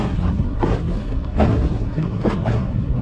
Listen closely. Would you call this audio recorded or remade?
remade